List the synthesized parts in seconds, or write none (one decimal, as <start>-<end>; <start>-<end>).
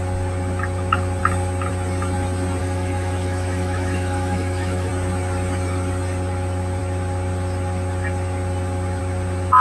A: 2.6-4.9